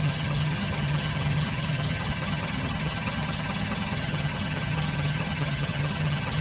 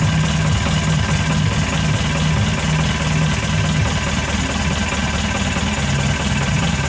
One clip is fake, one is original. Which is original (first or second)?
second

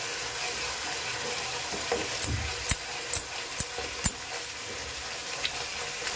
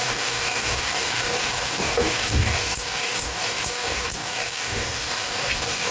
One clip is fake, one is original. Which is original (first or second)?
first